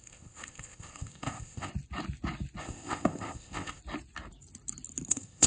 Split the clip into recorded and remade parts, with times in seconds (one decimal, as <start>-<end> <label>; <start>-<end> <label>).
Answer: 0.0-1.7 remade; 1.7-2.6 recorded; 2.6-3.8 remade; 3.8-5.1 recorded; 5.1-5.5 remade